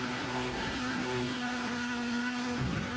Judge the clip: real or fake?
fake